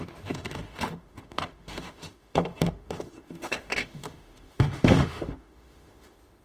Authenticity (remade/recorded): remade